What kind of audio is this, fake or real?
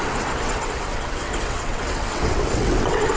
fake